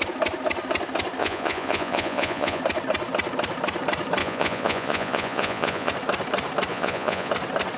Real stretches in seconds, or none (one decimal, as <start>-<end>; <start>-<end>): 0.0-1.2; 2.6-4.2; 5.9-6.7; 7.3-7.8